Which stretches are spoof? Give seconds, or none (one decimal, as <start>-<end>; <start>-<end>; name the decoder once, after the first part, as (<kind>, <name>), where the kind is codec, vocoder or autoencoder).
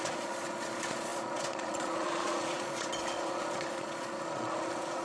0.0-5.0 (vocoder, Vocos)